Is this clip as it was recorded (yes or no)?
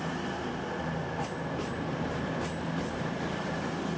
yes